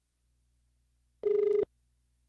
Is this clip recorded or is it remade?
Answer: recorded